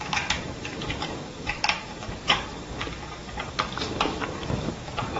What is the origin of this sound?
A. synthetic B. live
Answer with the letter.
A